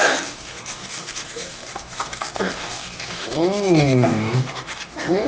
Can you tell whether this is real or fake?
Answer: fake